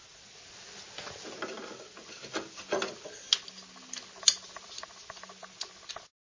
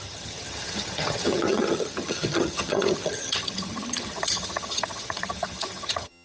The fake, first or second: second